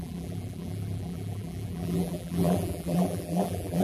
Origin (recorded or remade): remade